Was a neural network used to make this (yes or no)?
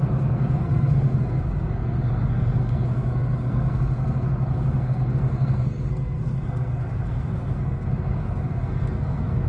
yes